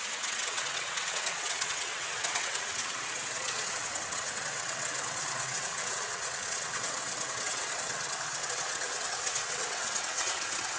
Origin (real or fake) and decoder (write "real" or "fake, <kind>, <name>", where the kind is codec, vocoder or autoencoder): fake, vocoder, WaveNeXt